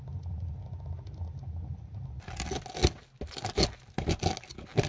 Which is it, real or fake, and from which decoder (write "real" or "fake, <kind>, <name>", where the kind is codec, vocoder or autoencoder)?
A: real